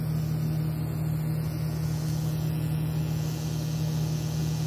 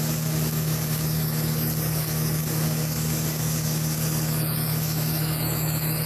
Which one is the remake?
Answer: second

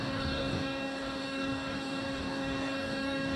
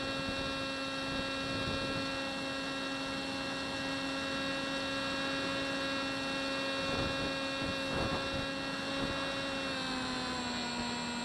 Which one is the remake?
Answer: first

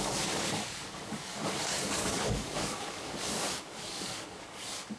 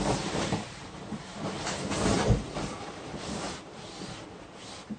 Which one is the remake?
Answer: first